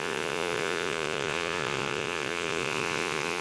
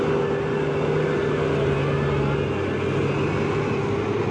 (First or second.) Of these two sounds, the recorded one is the second